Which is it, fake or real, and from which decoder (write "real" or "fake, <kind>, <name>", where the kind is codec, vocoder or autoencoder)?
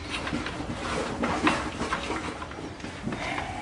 real